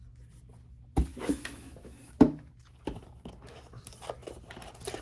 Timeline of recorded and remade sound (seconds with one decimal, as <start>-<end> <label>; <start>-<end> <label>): 0.0-1.1 recorded; 1.1-3.8 remade; 3.8-5.0 recorded